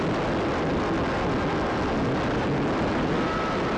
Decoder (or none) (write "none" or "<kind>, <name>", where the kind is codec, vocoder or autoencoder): none